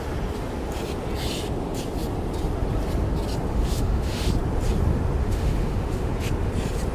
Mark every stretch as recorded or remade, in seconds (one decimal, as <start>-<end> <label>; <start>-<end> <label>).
0.0-3.5 recorded; 3.5-4.3 remade; 4.3-5.2 recorded; 5.2-6.1 remade; 6.1-6.9 recorded